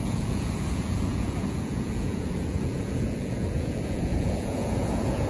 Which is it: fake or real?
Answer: fake